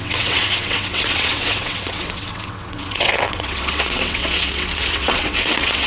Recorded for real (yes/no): no